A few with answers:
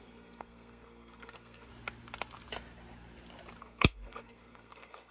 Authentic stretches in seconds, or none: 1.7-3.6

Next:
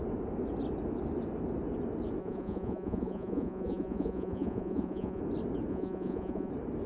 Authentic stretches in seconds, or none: 0.0-2.2; 5.2-5.7; 6.5-6.9

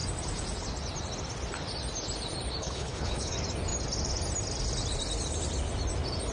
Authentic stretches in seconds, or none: 0.0-2.6; 3.3-6.3